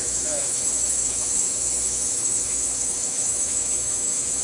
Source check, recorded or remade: remade